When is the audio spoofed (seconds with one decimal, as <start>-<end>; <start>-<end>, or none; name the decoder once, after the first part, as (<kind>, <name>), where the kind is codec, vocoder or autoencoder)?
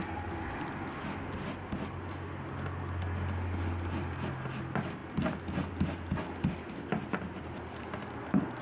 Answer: 6.9-8.6 (vocoder, BigVGAN v2)